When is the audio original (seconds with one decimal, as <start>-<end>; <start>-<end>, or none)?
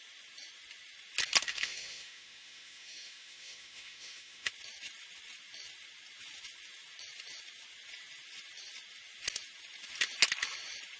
0.0-1.4; 4.5-11.0